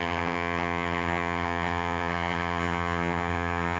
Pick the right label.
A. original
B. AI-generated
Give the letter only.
B